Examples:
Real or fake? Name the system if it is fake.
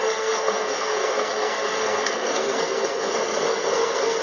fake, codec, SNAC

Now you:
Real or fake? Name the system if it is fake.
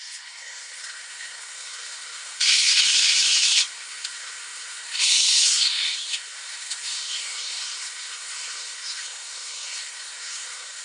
fake, codec, SNAC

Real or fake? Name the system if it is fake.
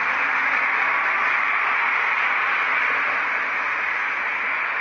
real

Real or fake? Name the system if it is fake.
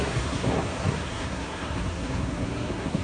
fake, codec, SNAC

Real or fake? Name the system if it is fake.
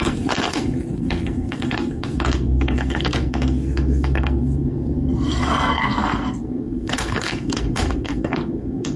fake, codec, SNAC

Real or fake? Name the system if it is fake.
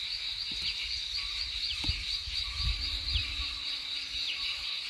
real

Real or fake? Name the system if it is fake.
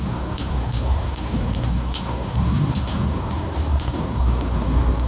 fake, codec, SNAC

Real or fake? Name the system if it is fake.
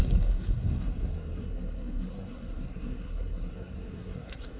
fake, codec, SNAC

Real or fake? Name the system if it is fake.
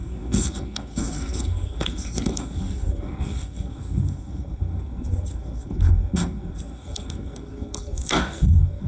fake, codec, SNAC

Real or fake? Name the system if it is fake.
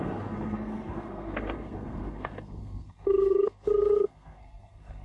fake, codec, SNAC